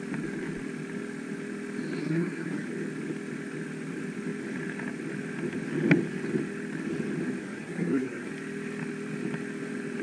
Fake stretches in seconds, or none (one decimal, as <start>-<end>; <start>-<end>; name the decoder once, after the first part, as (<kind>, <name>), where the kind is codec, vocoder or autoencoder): 2.0-2.7 (codec, SNAC); 7.4-8.3